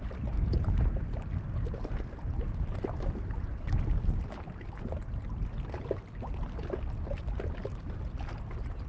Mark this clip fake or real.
real